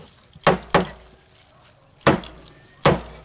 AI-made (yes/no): no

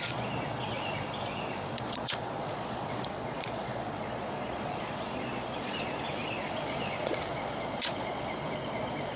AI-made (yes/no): yes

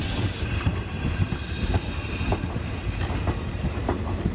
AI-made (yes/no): no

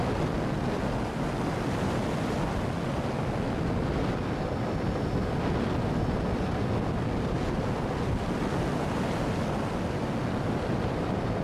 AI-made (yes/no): no